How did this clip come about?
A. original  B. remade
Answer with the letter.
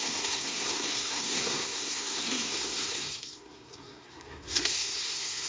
B